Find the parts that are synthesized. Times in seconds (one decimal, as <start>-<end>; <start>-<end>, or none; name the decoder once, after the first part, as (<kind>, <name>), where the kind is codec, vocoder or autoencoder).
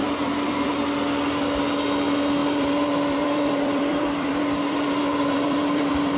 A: 0.0-0.7 (vocoder, BigVGAN v2); 2.4-6.2